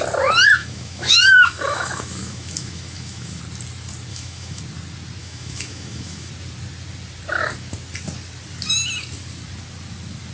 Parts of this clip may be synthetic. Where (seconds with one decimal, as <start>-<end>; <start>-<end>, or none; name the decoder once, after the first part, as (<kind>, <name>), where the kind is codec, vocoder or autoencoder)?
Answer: 0.6-3.4 (autoencoder, DAC-VAE); 4.1-4.6; 5.2-6.3